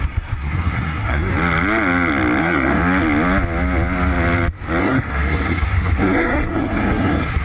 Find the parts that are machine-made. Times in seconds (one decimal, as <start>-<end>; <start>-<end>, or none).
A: 0.0-1.3; 2.4-2.8; 4.8-7.4